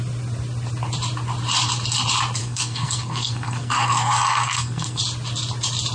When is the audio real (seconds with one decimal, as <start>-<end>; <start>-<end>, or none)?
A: 0.0-2.4; 5.0-5.9